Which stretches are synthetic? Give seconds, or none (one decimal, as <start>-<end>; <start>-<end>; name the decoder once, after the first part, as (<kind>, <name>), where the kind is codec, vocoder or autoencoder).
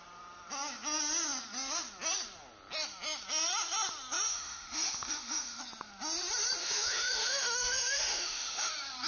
4.3-5.6 (autoencoder, DAC-VAE); 6.6-8.7